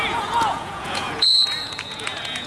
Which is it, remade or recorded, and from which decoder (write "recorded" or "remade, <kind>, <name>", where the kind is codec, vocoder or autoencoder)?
remade, vocoder, Vocos